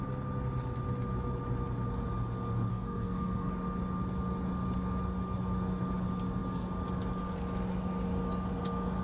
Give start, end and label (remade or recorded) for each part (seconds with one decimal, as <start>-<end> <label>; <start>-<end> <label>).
0.0-2.7 recorded; 2.7-3.5 remade; 3.5-9.0 recorded